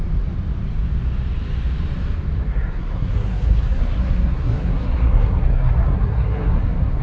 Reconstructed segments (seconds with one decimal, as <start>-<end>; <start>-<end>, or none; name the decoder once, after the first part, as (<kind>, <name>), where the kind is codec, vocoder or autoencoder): 2.5-7.0 (codec, SNAC)